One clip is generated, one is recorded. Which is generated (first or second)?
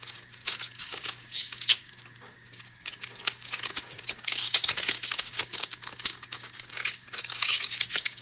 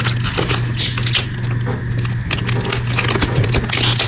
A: first